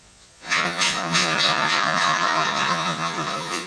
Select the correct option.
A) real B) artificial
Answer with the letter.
B